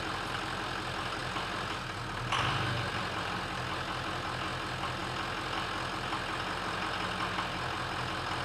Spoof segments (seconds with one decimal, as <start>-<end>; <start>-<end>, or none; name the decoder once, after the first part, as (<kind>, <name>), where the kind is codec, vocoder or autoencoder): none